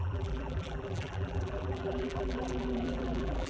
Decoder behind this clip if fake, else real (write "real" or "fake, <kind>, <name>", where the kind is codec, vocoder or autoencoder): fake, vocoder, BigVGAN v2